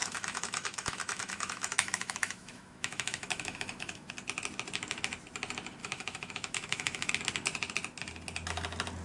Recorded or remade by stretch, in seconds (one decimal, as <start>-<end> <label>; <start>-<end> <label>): 0.0-4.1 remade; 4.1-5.8 recorded; 5.8-7.1 remade; 7.1-9.0 recorded